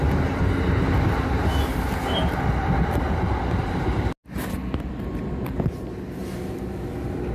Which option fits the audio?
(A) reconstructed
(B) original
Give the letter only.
B